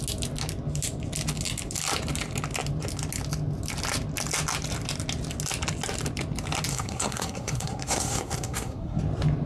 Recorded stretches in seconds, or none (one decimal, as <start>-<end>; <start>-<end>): 0.0-6.7; 9.0-9.5

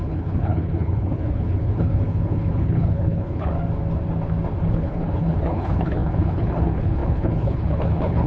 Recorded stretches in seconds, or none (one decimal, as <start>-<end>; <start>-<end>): 3.5-4.6

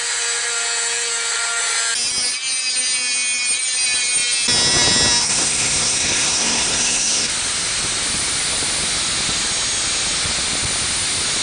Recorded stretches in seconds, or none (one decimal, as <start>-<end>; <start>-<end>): 0.0-5.2; 7.3-11.4

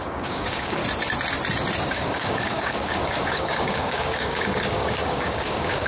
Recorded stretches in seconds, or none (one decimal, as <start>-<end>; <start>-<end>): 0.8-1.9

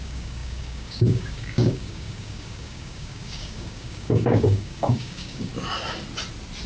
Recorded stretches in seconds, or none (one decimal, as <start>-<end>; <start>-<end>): 5.5-6.7

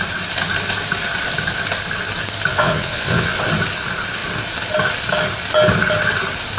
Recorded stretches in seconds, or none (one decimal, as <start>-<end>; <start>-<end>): 0.0-2.5; 3.4-6.6